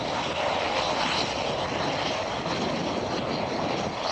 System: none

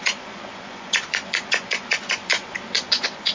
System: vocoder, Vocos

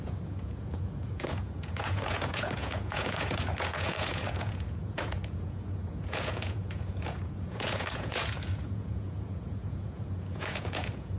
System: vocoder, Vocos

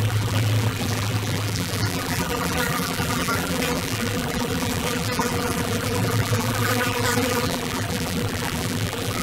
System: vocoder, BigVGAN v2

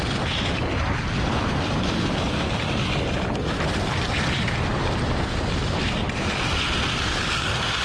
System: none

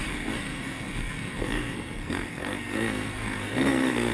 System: codec, SNAC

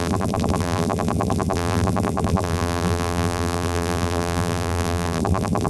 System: vocoder, BigVGAN v2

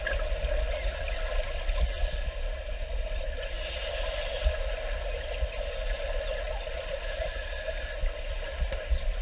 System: none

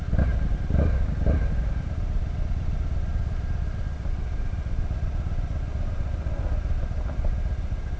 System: none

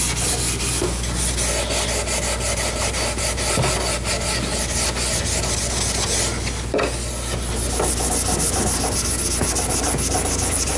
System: none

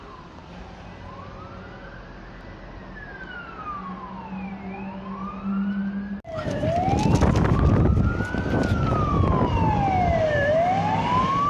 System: none